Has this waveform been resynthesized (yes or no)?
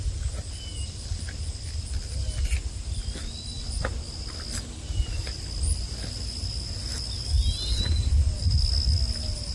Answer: no